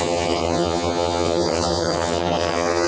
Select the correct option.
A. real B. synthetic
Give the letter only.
B